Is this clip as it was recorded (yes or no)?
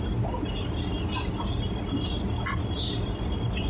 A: yes